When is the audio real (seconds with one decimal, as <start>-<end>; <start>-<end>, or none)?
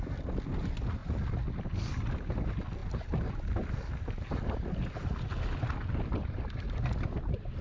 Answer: 0.0-7.6